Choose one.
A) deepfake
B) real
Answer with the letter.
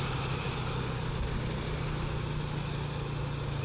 B